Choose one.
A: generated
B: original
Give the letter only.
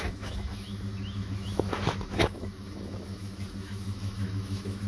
A